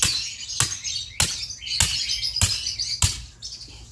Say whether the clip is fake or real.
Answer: real